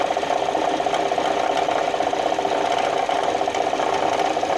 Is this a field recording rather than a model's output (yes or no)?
yes